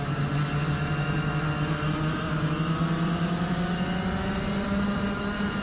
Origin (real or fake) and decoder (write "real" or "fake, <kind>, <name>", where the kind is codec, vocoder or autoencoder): real